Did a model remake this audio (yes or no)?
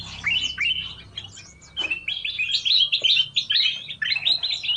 no